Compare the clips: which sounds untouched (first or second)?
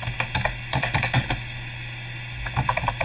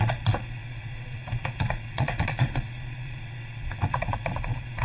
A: first